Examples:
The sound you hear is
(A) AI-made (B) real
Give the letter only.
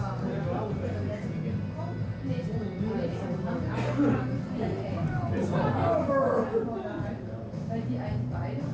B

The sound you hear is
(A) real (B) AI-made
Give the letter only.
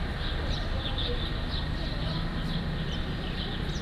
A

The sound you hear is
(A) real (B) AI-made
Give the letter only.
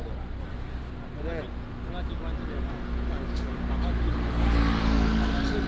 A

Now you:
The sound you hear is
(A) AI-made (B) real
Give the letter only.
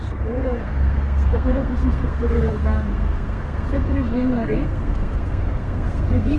A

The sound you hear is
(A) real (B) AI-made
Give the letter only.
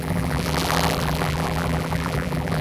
B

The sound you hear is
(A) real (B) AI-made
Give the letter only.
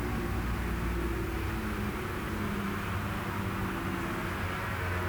A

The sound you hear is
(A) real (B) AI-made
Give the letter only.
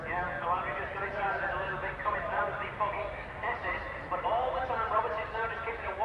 A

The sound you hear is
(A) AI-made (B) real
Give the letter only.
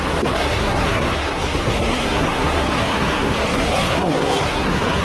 A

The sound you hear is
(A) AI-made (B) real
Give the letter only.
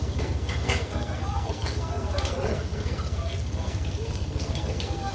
A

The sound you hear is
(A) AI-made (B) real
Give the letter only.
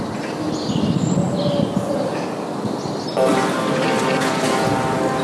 B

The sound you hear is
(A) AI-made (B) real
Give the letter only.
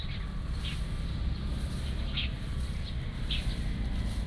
B